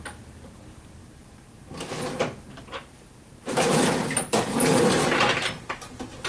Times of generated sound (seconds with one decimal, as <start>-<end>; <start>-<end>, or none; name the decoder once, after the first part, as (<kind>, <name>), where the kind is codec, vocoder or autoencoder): 1.0-4.8 (vocoder, BigVGAN v2)